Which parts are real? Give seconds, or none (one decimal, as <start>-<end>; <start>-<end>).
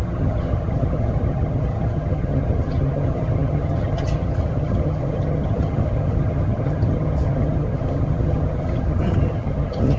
none